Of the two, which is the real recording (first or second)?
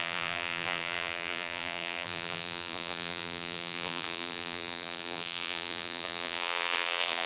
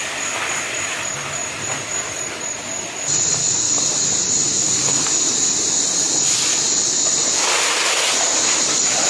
second